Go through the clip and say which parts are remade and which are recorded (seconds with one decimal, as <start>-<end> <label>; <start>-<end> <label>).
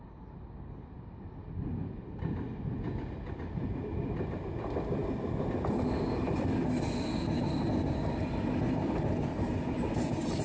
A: 0.0-10.4 recorded